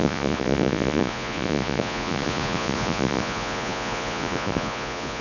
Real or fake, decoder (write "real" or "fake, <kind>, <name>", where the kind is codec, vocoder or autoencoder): fake, vocoder, Vocos